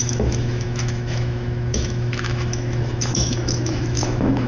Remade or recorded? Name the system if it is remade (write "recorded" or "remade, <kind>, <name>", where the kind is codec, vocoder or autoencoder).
remade, autoencoder, DAC-VAE